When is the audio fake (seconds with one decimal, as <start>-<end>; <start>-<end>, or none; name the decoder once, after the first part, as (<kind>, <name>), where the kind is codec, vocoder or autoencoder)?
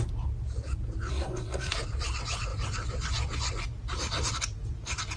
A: 1.1-1.7 (codec, SNAC)